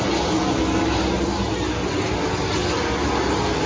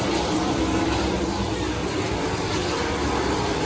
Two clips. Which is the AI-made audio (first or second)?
second